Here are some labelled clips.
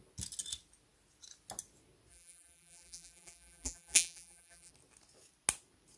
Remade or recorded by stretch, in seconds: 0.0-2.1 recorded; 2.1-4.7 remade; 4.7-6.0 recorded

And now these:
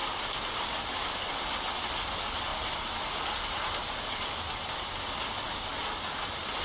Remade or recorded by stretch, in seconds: 0.0-1.3 remade; 1.3-2.5 recorded; 2.5-3.8 remade; 3.8-6.6 recorded

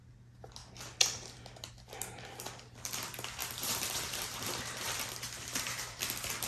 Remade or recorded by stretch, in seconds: 0.0-3.4 recorded; 3.4-6.0 remade; 6.0-6.5 recorded

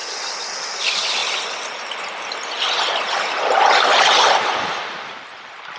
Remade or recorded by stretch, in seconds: 0.0-0.7 recorded; 0.7-1.2 remade; 1.2-4.7 recorded; 4.7-5.8 remade

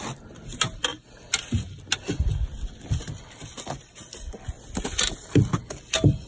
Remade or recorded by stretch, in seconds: 0.0-6.3 recorded

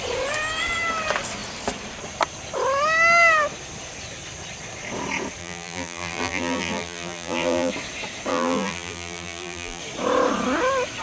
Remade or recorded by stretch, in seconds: 0.0-5.4 recorded; 5.4-7.7 remade; 7.7-8.3 recorded; 8.3-9.8 remade; 9.8-11.0 recorded